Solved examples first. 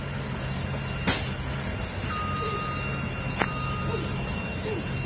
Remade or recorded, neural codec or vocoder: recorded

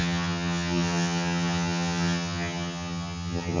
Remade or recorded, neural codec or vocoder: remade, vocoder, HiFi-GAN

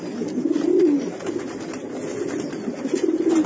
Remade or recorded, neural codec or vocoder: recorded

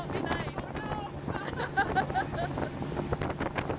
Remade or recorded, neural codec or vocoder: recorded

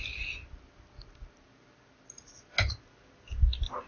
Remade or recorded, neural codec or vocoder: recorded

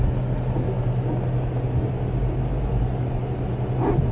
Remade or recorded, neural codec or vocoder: recorded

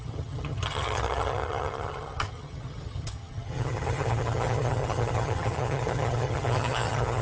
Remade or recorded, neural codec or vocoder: remade, vocoder, HiFi-GAN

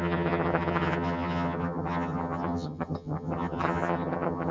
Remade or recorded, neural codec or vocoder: remade, vocoder, HiFi-GAN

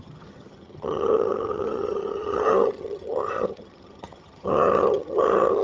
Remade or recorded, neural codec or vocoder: remade, vocoder, HiFi-GAN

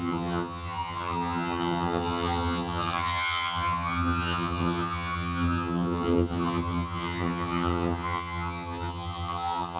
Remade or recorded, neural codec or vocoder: remade, vocoder, HiFi-GAN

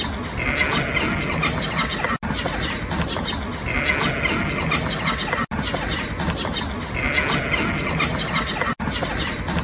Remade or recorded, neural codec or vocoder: recorded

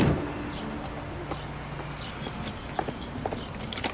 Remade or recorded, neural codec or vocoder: recorded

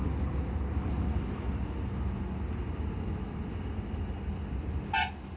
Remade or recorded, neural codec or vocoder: recorded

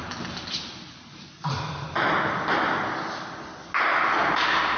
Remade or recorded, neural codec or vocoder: recorded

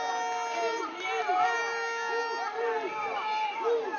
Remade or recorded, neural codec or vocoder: recorded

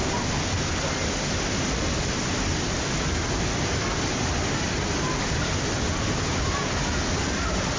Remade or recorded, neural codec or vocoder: recorded